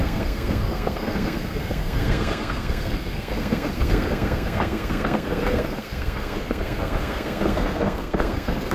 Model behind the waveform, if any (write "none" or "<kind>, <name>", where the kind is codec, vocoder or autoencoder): codec, SNAC